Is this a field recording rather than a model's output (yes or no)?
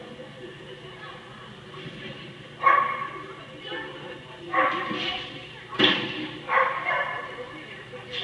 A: yes